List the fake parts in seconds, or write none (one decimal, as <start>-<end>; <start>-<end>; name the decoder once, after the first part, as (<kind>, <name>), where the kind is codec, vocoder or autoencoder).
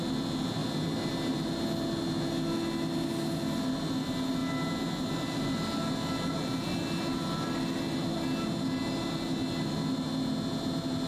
none